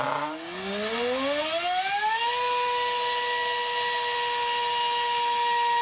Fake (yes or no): no